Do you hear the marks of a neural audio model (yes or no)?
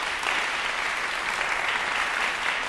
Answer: no